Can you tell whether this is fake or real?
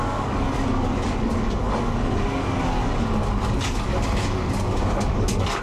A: fake